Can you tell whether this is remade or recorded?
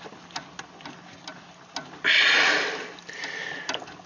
recorded